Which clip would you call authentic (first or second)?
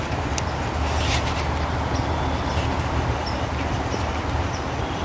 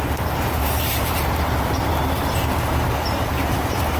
first